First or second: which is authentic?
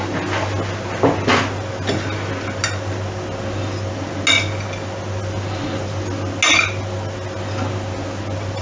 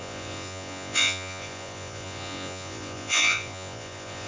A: first